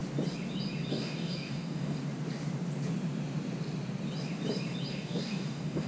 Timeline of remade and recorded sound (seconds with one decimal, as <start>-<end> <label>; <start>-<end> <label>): 0.0-0.9 recorded; 0.9-2.0 remade; 2.0-4.9 recorded; 4.9-5.9 remade